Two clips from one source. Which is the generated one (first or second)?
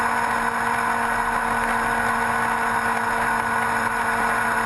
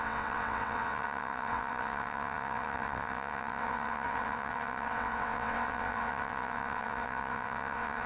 second